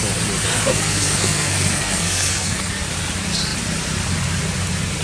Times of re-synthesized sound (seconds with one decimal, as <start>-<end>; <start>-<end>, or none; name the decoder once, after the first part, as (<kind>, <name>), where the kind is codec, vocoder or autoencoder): 0.5-2.7 (codec, SNAC)